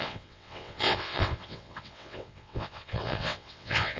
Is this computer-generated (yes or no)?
yes